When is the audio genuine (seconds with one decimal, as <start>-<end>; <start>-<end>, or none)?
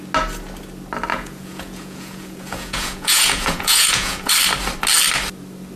0.0-1.1; 4.3-5.8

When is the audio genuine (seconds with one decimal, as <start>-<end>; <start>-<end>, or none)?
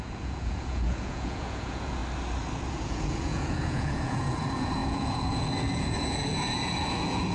2.0-2.7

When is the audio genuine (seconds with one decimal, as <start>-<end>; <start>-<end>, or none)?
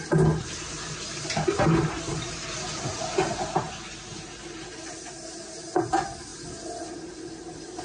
0.0-7.8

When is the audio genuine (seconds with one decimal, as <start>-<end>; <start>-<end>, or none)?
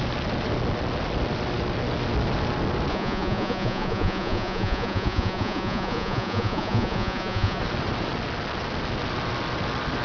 0.0-2.9; 7.6-10.0